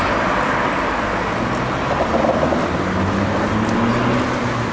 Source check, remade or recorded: recorded